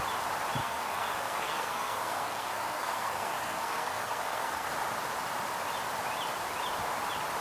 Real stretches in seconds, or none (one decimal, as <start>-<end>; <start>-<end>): 0.0-0.6; 4.7-7.4